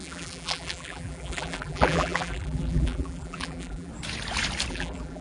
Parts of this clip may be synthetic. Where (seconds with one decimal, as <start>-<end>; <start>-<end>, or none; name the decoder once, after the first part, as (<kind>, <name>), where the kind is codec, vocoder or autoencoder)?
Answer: 0.0-3.9 (vocoder, BigVGAN v2); 4.7-5.2